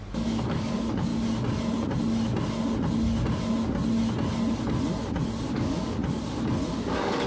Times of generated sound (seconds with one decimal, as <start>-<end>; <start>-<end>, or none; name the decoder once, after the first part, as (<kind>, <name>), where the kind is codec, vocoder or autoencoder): 0.0-1.1 (codec, DAC); 5.5-6.0; 6.7-7.3